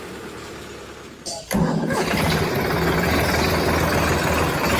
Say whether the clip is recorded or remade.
remade